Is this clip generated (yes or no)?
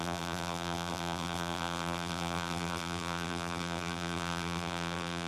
yes